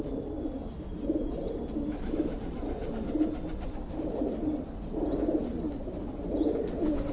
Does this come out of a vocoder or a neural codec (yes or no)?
no